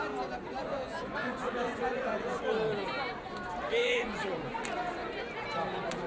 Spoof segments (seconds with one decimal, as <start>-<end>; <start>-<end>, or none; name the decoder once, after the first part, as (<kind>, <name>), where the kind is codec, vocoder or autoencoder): 0.6-2.4 (vocoder, Vocos); 3.8-4.6